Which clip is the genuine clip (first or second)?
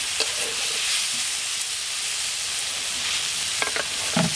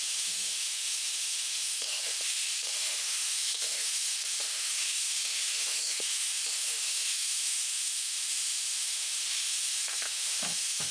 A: first